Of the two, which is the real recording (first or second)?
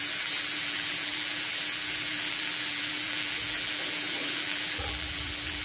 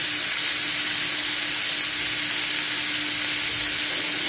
second